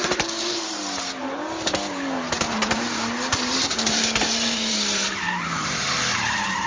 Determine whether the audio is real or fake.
fake